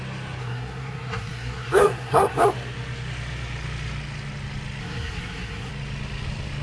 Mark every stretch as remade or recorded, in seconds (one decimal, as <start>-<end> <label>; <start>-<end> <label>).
0.0-0.4 recorded; 0.4-2.4 remade; 2.4-4.8 recorded; 4.8-5.7 remade; 5.7-6.6 recorded